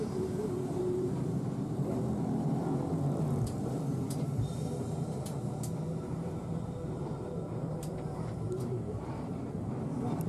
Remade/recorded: remade